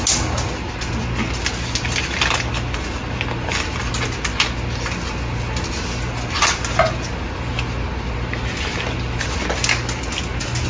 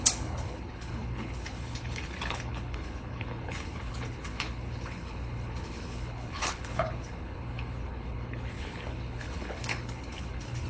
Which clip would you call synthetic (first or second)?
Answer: second